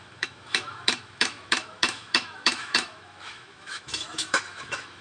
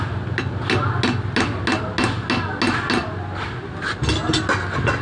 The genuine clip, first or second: second